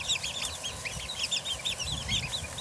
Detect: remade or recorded recorded